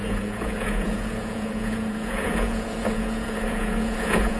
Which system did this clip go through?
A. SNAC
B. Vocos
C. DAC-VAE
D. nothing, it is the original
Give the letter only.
B